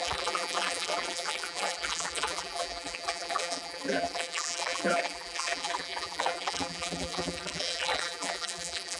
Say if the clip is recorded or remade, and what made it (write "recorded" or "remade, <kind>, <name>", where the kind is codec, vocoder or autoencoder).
remade, vocoder, BigVGAN v2